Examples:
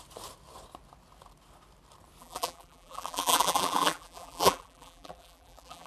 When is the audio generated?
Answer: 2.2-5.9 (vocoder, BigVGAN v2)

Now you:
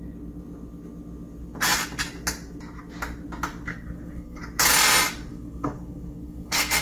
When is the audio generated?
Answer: 3.7-4.4 (codec, SNAC); 5.3-6.8